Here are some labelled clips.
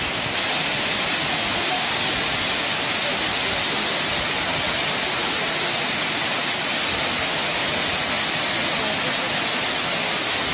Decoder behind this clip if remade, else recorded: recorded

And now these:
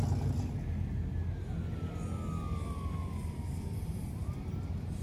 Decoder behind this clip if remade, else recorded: recorded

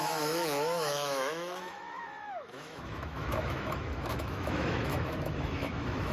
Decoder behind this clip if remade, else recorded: remade, autoencoder, DAC-VAE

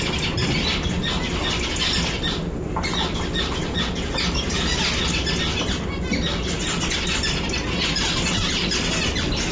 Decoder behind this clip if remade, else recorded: recorded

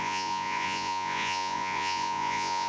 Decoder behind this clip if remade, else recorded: remade, vocoder, Vocos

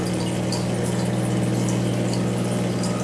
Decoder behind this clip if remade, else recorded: recorded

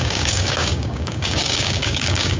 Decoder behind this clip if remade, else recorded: remade, codec, DAC